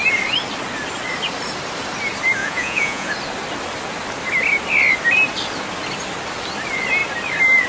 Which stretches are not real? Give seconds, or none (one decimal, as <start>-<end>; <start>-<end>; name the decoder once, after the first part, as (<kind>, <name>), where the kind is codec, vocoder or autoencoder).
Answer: 2.4-3.1 (vocoder, Vocos)